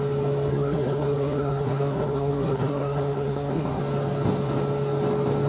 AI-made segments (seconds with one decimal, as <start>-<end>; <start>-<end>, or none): 0.5-3.8